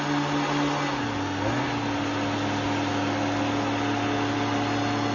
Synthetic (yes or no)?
no